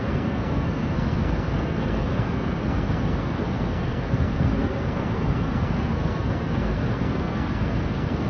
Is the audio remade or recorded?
remade